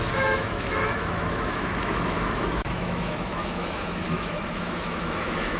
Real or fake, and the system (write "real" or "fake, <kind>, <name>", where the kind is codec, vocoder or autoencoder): fake, autoencoder, DAC-VAE